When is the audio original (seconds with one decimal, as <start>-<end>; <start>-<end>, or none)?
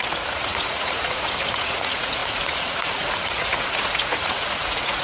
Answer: none